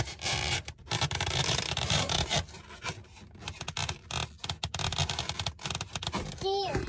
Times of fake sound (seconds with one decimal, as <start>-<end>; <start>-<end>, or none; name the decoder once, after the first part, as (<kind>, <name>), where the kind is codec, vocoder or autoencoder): 0.0-2.3 (vocoder, BigVGAN v2); 6.4-6.9